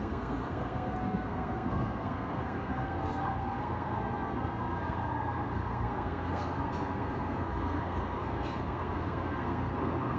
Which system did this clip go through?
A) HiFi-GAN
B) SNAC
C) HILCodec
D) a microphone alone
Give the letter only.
B